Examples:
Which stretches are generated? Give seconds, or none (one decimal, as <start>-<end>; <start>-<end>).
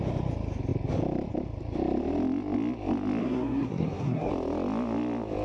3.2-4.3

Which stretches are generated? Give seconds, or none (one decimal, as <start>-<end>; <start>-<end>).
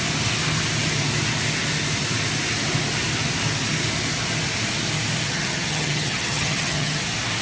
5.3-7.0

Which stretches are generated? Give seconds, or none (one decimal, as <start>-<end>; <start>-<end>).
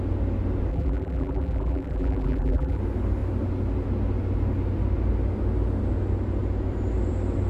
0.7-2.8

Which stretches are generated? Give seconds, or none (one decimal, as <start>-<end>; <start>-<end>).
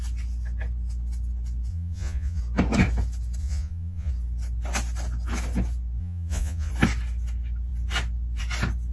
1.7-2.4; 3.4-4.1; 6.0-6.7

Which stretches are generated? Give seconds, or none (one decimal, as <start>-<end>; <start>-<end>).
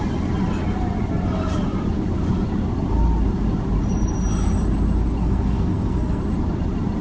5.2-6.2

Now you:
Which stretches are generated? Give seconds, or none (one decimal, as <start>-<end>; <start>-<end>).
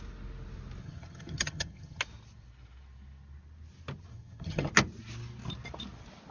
0.8-2.0; 4.1-4.7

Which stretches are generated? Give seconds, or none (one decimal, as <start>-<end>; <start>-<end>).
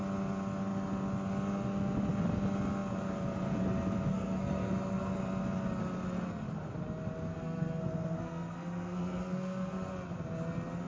4.1-5.1; 7.3-9.9